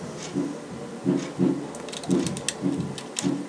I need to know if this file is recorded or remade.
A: recorded